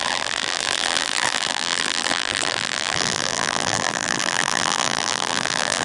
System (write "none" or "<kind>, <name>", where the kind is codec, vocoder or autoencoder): vocoder, BigVGAN v2